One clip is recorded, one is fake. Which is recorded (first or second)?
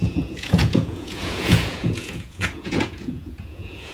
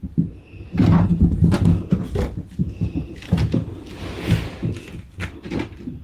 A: second